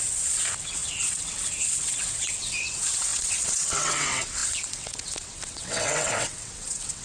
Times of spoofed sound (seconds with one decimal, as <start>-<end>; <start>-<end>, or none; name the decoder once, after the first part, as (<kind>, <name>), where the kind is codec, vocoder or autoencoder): 0.0-7.0 (vocoder, WaveNeXt)